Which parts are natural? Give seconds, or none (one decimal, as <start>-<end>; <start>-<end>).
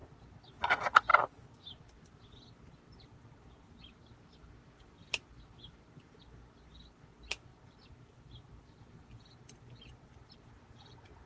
0.0-11.3